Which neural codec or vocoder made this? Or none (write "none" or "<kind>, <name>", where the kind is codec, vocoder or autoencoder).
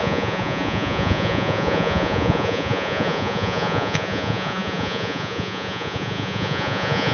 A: vocoder, Vocos